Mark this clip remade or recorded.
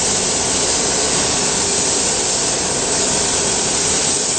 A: recorded